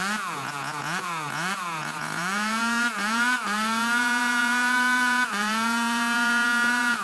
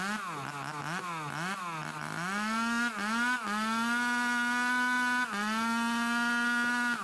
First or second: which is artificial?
first